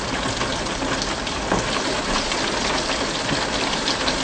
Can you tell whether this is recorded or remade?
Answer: recorded